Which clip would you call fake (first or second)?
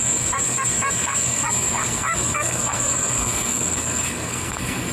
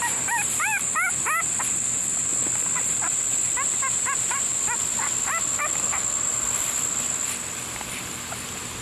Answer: first